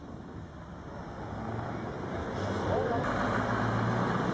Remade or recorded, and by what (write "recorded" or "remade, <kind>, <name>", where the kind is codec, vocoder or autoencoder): recorded